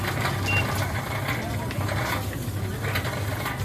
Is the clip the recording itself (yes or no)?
yes